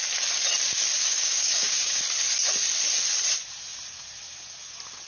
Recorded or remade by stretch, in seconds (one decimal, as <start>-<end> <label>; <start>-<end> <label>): 0.0-1.0 recorded; 1.0-2.0 remade; 2.0-5.1 recorded